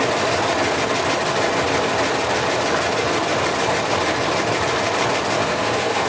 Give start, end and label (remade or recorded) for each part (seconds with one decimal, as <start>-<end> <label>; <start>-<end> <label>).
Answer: 0.0-5.4 recorded; 5.4-6.1 remade